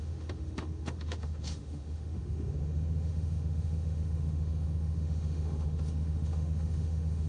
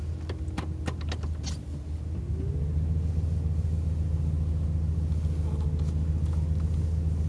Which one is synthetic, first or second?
first